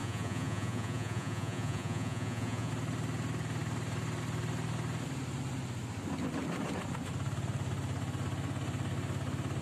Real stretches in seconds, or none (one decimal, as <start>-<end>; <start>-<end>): 2.7-9.6